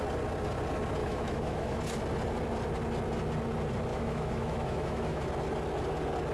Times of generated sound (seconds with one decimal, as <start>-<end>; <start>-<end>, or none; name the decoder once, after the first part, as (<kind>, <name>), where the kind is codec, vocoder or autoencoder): 1.0-1.8 (autoencoder, DAC-VAE); 3.9-5.2